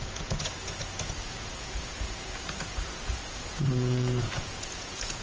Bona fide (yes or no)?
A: no